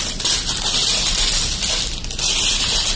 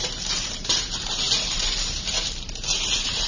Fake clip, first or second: second